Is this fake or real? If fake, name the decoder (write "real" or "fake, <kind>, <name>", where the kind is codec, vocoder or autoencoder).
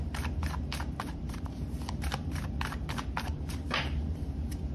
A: fake, vocoder, BigVGAN v2